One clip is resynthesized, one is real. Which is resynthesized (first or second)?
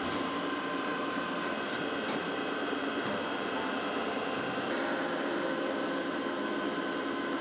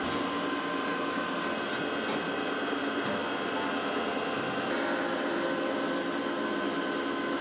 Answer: first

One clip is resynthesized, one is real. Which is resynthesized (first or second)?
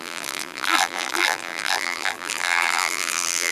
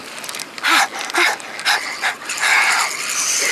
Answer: first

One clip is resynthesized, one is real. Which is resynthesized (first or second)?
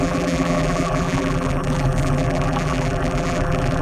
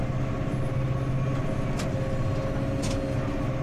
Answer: first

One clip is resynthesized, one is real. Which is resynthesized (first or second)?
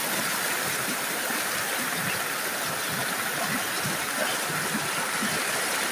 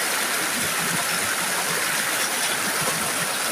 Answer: second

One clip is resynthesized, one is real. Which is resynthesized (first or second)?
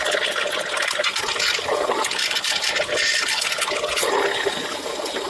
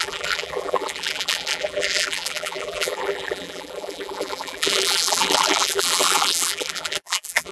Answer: second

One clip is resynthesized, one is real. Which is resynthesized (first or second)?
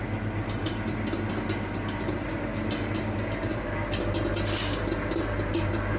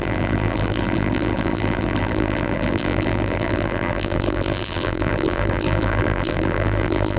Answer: second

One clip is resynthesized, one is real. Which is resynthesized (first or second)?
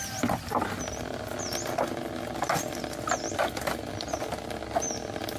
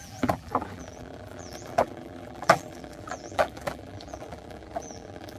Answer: second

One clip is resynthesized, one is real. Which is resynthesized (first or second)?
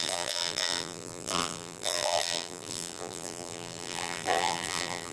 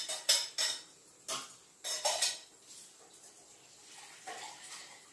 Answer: first